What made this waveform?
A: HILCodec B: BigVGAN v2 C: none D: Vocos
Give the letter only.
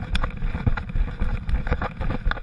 C